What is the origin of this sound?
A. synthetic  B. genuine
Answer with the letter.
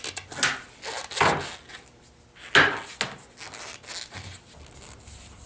B